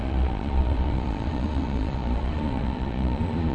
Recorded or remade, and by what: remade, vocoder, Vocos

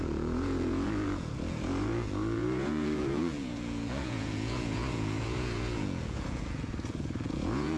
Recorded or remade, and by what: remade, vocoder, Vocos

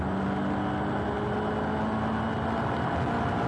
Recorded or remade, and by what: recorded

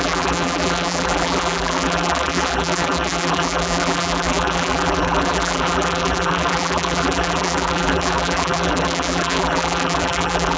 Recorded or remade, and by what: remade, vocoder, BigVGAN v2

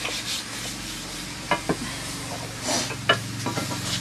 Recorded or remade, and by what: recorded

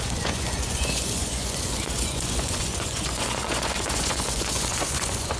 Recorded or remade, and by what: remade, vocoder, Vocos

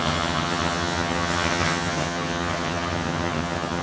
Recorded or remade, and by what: remade, vocoder, HiFi-GAN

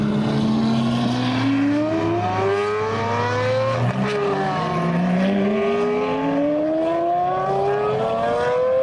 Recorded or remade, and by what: recorded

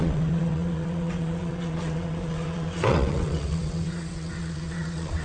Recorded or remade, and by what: remade, vocoder, WaveNeXt